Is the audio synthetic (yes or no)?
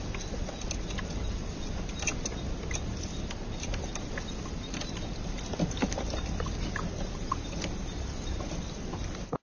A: no